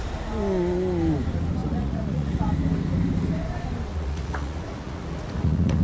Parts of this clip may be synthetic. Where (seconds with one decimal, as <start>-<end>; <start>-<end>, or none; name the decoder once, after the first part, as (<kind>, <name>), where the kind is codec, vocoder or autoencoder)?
1.6-2.5 (vocoder, Vocos); 3.9-5.8